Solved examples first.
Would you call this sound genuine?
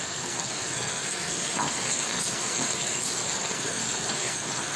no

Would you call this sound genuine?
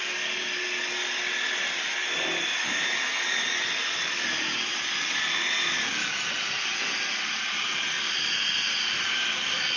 yes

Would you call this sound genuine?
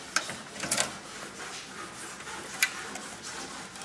yes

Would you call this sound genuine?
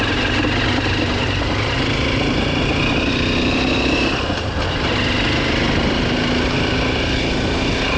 yes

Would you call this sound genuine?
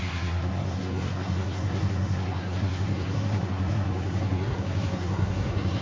no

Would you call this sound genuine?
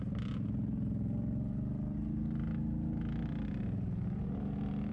yes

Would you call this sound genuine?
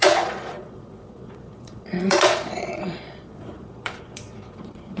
no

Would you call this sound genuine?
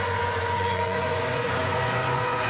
no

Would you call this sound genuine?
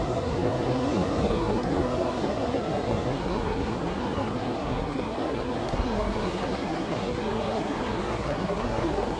no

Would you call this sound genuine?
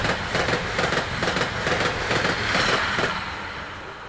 yes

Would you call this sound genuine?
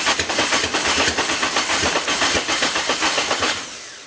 yes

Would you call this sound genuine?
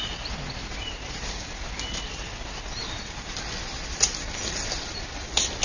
yes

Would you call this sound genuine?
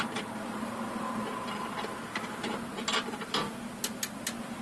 yes